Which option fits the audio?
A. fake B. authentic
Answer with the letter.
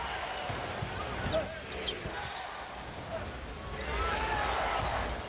B